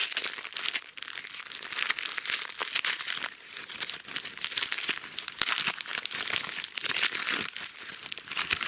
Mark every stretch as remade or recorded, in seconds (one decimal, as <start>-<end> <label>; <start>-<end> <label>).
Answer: 0.0-8.7 recorded

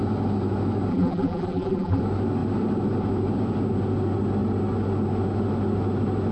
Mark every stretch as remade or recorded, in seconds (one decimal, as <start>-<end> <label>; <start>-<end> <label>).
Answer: 0.0-0.9 recorded; 0.9-2.0 remade; 2.0-6.3 recorded

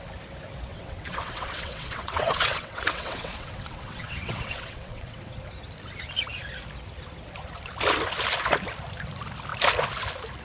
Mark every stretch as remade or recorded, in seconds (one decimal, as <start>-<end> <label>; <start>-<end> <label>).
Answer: 0.0-0.7 recorded; 0.7-5.3 remade; 5.3-10.4 recorded

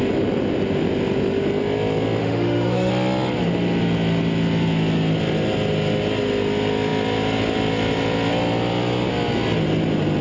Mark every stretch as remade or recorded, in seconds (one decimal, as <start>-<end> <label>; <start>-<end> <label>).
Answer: 0.0-2.2 recorded; 2.2-2.9 remade; 2.9-10.2 recorded

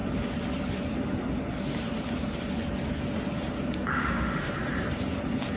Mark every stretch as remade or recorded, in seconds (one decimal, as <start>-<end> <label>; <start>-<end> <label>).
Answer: 0.0-3.9 recorded; 3.9-4.5 remade; 4.5-5.6 recorded

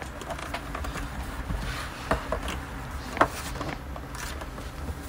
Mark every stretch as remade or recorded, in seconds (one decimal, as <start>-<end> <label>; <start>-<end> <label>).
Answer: 0.0-5.1 recorded

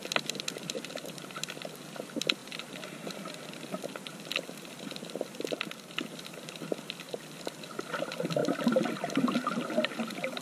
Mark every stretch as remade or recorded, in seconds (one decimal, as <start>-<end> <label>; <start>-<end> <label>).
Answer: 0.0-10.4 recorded

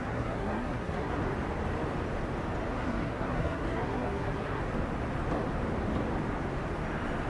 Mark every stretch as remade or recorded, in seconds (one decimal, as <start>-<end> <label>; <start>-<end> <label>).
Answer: 0.0-1.2 remade; 1.2-2.7 recorded; 2.7-4.6 remade; 4.6-7.3 recorded